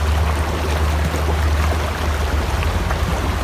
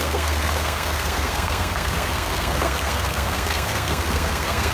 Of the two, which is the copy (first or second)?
second